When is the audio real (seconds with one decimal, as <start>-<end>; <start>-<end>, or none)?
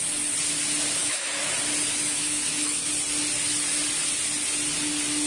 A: 0.0-1.0; 1.5-1.9; 2.9-5.3